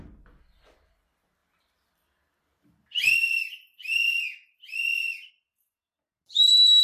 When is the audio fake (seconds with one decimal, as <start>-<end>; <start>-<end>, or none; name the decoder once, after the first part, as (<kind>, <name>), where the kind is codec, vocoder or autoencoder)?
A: 1.4-5.3 (vocoder, BigVGAN v2)